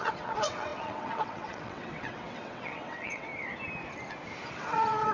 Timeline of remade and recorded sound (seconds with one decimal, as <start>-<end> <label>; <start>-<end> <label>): 0.0-3.3 remade; 3.3-4.5 recorded; 4.5-5.1 remade